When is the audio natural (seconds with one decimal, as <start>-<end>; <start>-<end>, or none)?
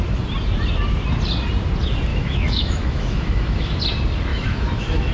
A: 0.0-2.1; 3.8-4.3